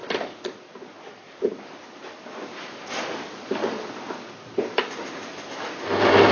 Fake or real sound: real